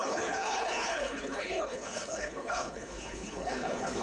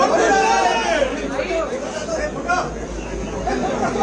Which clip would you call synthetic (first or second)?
first